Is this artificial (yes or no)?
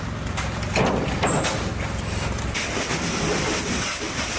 no